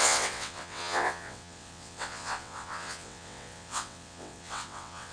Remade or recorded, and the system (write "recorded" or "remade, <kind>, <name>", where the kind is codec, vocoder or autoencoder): remade, vocoder, WaveNeXt